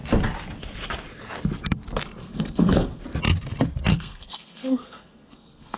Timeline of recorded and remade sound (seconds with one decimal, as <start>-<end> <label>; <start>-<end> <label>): 0.0-2.2 recorded; 2.2-3.0 remade; 3.0-3.9 recorded; 3.9-5.8 remade